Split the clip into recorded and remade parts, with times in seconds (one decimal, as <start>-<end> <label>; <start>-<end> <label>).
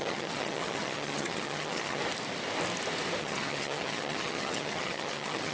0.0-2.0 remade; 2.0-3.2 recorded; 3.2-5.5 remade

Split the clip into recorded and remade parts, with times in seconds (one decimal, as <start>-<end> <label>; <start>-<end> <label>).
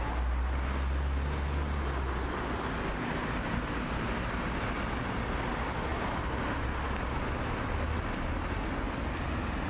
0.0-9.7 recorded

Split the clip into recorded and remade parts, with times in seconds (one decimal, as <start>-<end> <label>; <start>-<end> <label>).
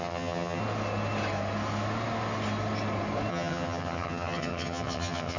0.0-0.6 remade; 0.6-3.3 recorded; 3.3-5.4 remade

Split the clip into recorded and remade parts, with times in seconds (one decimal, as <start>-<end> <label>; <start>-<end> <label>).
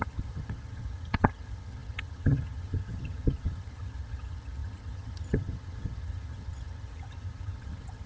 0.0-8.1 remade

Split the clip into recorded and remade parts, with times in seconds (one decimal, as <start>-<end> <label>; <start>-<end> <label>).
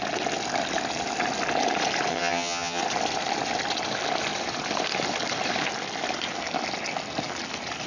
0.0-2.1 recorded; 2.1-2.8 remade; 2.8-7.9 recorded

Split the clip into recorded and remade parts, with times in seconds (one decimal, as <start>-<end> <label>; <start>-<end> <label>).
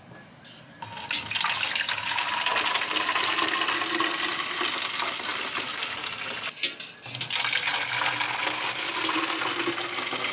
0.0-10.3 recorded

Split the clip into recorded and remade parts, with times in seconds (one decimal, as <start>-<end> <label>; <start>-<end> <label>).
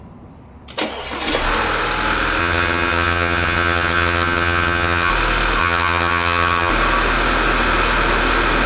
0.0-2.4 recorded; 2.4-5.1 remade; 5.1-5.6 recorded; 5.6-6.7 remade; 6.7-8.7 recorded